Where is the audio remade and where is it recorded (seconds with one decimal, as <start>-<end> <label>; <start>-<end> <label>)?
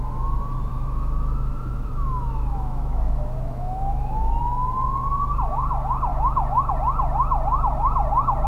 0.0-0.7 recorded; 0.7-4.4 remade; 4.4-6.1 recorded; 6.1-6.7 remade; 6.7-8.5 recorded